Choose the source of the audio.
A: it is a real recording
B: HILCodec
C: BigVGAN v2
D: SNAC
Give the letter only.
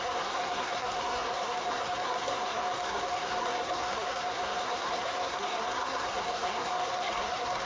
D